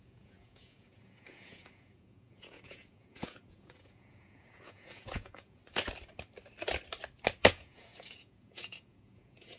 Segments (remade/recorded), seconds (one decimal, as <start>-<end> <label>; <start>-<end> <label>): 0.0-5.6 remade; 5.6-7.5 recorded; 7.5-9.6 remade